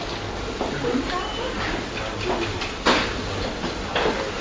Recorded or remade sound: recorded